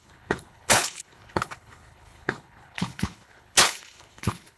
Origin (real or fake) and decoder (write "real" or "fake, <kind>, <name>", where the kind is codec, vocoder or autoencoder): fake, codec, HILCodec